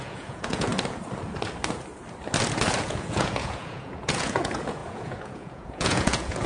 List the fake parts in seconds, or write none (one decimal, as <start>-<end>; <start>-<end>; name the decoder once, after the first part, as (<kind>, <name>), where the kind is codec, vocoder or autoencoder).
0.0-0.7 (vocoder, Vocos); 2.8-6.5